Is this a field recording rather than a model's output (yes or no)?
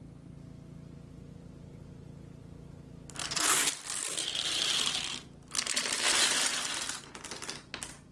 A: yes